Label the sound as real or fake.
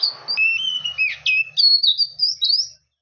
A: real